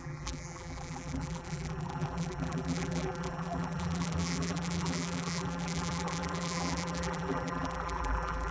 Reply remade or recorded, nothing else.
remade